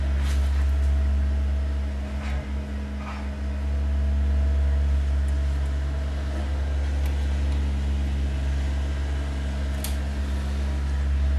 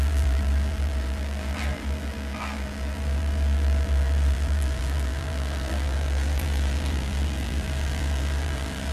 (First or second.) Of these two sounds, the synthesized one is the second